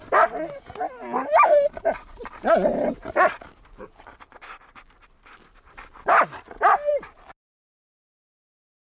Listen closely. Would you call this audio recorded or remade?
recorded